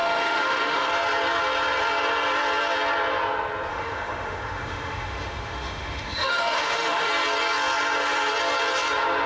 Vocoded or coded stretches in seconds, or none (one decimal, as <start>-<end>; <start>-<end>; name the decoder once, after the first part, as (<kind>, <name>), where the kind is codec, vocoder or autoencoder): 0.0-0.9 (autoencoder, DAC-VAE); 3.7-7.1